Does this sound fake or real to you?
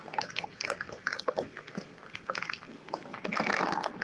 fake